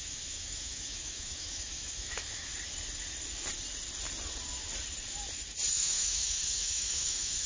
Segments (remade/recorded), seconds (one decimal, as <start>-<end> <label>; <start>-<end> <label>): 0.0-2.5 remade; 2.5-5.7 recorded; 5.7-7.5 remade